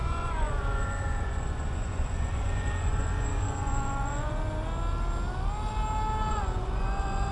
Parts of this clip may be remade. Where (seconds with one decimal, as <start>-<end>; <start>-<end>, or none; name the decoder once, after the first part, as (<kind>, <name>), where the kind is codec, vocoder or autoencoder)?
0.0-4.4 (vocoder, Vocos); 6.3-7.3